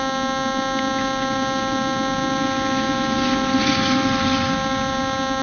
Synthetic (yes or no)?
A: no